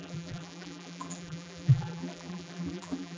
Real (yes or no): no